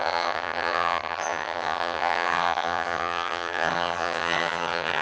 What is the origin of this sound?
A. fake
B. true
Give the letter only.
A